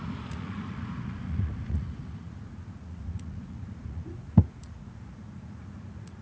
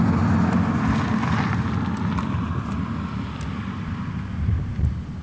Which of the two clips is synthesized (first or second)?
first